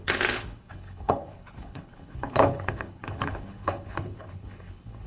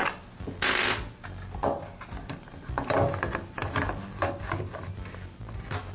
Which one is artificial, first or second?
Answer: first